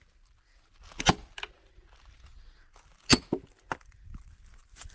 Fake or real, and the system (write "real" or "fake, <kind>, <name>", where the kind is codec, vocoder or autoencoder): real